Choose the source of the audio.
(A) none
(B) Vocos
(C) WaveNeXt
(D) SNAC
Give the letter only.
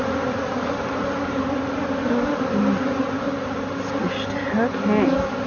A